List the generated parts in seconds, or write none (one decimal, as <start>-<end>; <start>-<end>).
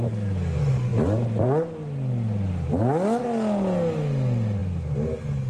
none